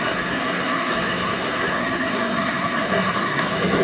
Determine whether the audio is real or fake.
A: fake